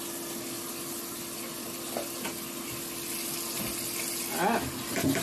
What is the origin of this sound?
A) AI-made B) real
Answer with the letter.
B